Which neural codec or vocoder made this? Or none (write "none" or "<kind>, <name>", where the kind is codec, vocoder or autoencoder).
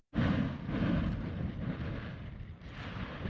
none